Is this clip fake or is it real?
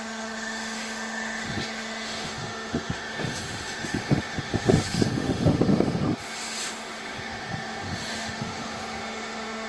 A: fake